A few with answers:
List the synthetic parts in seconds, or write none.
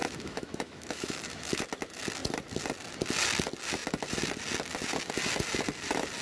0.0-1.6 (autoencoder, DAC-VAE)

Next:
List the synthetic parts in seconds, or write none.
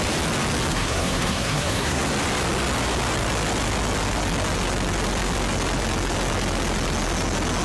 0.7-2.0 (codec, SNAC)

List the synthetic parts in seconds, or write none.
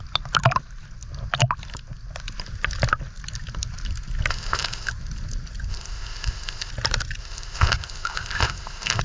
4.3-4.9 (codec, ZipCodec); 5.7-6.7; 7.2-9.0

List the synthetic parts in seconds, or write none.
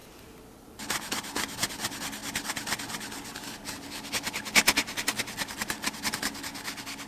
none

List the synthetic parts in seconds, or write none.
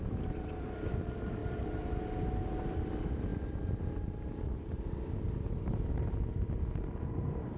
none